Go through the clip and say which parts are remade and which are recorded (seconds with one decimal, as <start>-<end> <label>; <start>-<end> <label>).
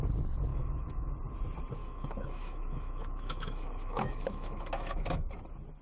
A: 0.0-0.5 recorded; 0.5-1.1 remade; 1.1-1.8 recorded; 1.8-5.3 remade; 5.3-5.8 recorded